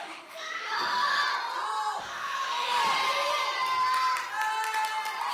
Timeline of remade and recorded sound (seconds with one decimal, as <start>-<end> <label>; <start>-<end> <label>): 0.0-1.2 remade; 1.2-2.0 recorded; 2.0-2.8 remade; 2.8-5.3 recorded